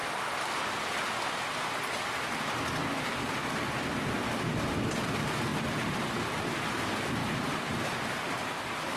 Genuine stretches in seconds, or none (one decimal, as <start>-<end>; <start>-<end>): 4.7-7.2

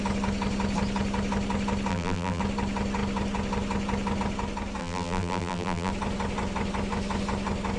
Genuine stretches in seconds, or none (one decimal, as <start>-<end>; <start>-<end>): 0.0-1.9; 2.4-4.8; 5.9-7.8

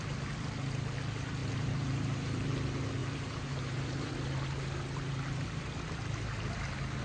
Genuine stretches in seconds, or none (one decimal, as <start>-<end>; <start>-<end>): 0.0-1.4; 2.5-3.0; 4.1-7.0